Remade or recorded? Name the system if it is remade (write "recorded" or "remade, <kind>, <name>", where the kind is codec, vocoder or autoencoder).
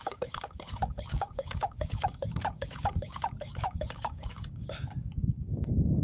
remade, codec, DAC